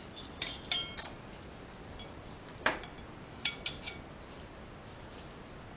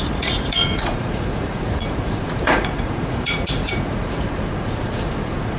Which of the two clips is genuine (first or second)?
first